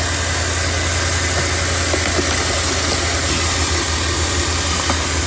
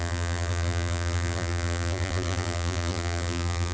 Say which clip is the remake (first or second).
second